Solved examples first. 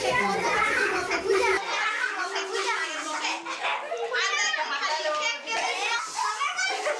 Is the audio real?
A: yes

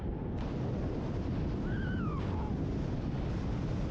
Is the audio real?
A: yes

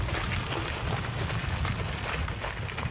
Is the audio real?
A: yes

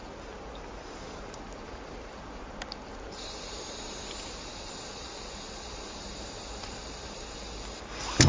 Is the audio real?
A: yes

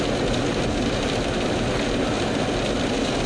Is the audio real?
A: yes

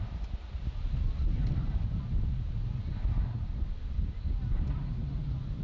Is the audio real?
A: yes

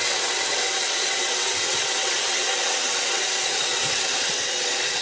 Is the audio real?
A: no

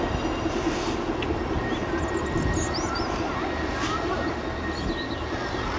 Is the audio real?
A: yes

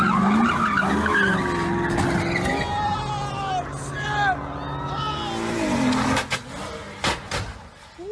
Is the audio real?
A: yes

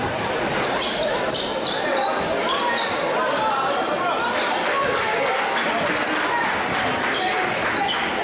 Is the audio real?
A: yes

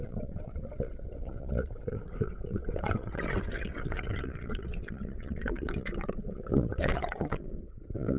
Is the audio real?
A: no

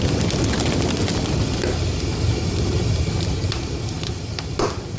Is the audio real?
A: yes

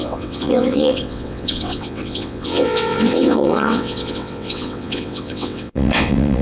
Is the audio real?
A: no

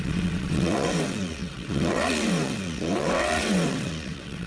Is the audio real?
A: no